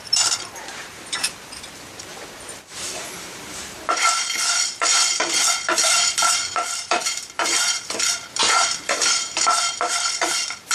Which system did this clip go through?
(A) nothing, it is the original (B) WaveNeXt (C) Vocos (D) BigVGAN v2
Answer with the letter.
D